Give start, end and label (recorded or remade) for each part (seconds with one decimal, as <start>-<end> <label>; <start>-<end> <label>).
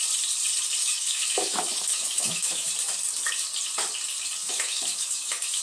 0.0-0.8 recorded; 0.8-2.7 remade; 2.7-4.4 recorded; 4.4-5.6 remade